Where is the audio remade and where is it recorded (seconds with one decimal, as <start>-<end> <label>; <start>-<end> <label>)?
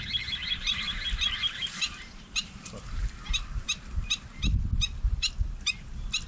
0.0-1.4 recorded; 1.4-3.1 remade; 3.1-6.3 recorded